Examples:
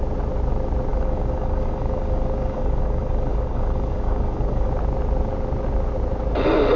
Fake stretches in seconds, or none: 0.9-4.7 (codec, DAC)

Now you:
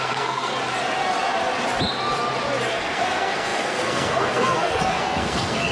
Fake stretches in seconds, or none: 0.0-0.5 (codec, SNAC); 2.7-5.7

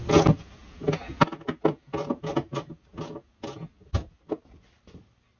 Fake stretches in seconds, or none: none

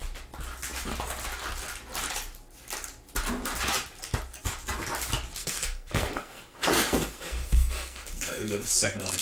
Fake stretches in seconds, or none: 5.4-9.2 (codec, SNAC)

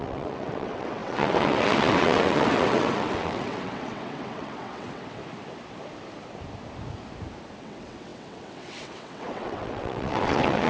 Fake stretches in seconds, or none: 0.0-5.2 (vocoder, WaveNeXt); 7.6-10.7